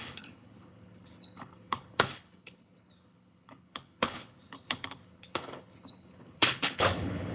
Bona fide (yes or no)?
no